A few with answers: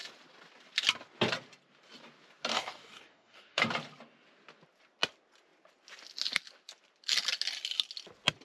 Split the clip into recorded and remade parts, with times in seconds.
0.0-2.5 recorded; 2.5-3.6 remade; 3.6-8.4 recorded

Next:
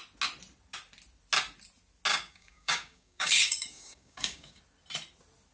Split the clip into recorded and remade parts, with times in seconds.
0.0-2.1 recorded; 2.1-4.6 remade; 4.6-5.5 recorded

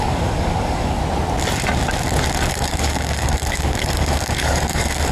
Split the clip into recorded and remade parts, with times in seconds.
0.0-1.0 remade; 1.0-2.5 recorded; 2.5-5.1 remade

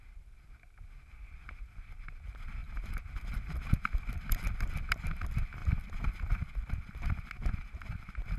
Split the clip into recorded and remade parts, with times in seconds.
0.0-8.4 recorded

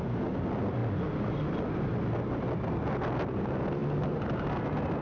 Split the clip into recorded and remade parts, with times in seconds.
0.0-5.0 recorded

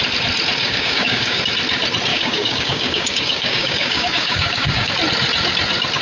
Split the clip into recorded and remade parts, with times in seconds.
0.0-0.6 recorded; 0.6-1.4 remade; 1.4-2.1 recorded; 2.1-4.9 remade; 4.9-6.0 recorded